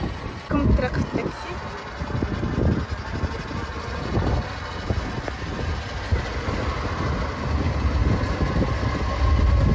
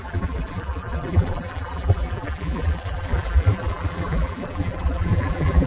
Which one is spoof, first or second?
second